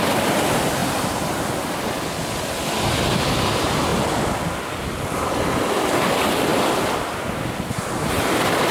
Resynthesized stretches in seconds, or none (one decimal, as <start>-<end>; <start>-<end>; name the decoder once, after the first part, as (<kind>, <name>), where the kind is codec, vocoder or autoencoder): none